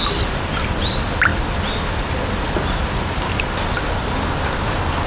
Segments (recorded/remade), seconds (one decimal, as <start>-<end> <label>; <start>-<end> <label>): 0.0-5.1 recorded